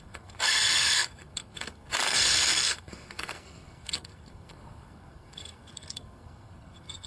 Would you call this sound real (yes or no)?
no